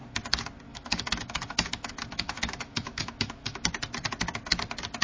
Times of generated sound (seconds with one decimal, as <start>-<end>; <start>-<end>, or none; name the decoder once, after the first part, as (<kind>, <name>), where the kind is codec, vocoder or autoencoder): 0.7-3.7 (autoencoder, DAC-VAE)